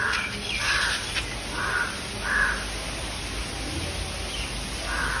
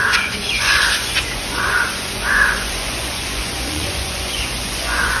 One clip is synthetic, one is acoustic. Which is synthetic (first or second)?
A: second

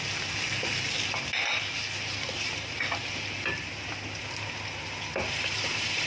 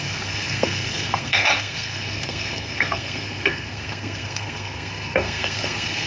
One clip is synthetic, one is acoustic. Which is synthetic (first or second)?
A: second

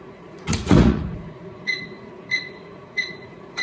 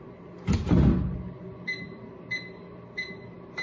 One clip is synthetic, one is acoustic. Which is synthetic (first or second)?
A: first